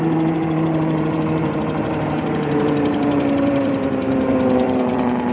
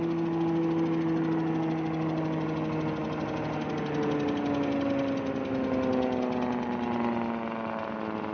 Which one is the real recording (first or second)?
second